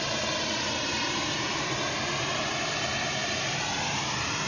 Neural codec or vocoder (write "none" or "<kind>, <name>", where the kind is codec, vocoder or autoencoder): vocoder, BigVGAN v2